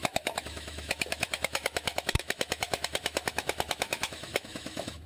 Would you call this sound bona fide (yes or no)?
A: no